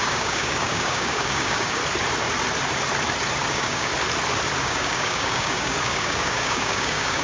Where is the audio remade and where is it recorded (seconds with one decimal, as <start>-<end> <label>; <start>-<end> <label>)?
0.0-1.8 remade; 1.8-3.5 recorded; 3.5-3.9 remade; 3.9-4.6 recorded; 4.6-7.2 remade